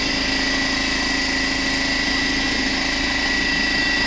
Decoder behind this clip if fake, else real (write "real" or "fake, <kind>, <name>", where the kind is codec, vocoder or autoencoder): real